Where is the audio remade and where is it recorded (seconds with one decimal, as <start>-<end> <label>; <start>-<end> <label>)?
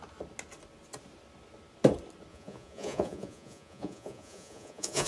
0.0-2.3 recorded; 2.3-5.1 remade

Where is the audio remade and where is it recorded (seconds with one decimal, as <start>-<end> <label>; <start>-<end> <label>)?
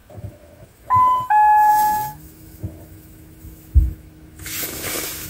0.0-5.3 remade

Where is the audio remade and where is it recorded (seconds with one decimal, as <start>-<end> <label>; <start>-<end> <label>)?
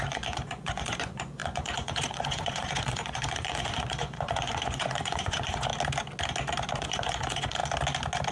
0.0-5.7 remade; 5.7-6.8 recorded; 6.8-7.6 remade; 7.6-8.3 recorded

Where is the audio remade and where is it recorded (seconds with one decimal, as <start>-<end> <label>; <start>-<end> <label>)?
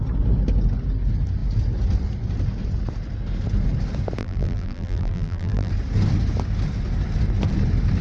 0.0-4.2 recorded; 4.2-5.7 remade; 5.7-8.0 recorded